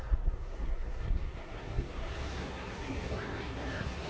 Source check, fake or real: fake